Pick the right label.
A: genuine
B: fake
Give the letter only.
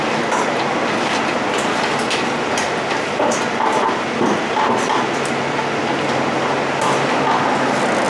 A